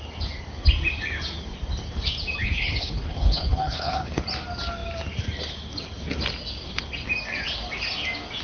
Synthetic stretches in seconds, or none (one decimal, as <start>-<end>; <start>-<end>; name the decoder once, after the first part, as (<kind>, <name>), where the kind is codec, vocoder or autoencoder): 2.4-4.2 (codec, HILCodec)

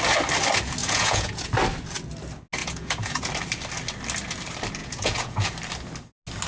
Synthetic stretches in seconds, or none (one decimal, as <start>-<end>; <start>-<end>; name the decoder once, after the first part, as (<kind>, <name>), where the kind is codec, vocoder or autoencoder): 0.8-1.5 (vocoder, Vocos); 2.6-3.3; 4.8-5.5

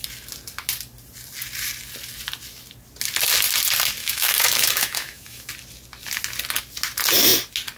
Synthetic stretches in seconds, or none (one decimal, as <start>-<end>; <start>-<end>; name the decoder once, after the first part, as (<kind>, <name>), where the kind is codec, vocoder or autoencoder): 4.0-5.5 (autoencoder, DAC-VAE)

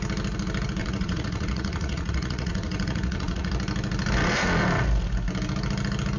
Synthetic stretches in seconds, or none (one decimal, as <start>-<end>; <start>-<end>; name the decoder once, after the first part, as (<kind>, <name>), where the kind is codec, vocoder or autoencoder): 0.8-3.5 (vocoder, Vocos)

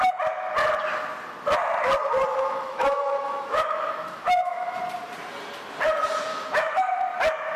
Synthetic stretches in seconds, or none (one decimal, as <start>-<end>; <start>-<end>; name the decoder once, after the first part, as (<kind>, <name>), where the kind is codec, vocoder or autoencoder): 2.3-4.8 (autoencoder, DAC-VAE); 6.3-7.0

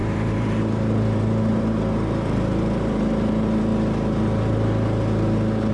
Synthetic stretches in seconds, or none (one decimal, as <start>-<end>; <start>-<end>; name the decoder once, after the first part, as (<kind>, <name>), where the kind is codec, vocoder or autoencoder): 0.0-3.7 (vocoder, BigVGAN v2)